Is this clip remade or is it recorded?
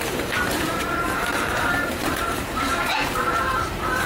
remade